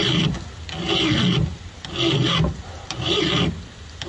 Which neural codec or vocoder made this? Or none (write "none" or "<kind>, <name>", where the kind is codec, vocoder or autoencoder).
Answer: none